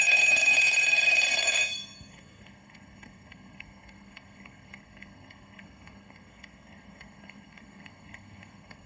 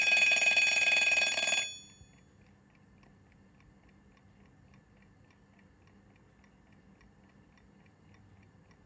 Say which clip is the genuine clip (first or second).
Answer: second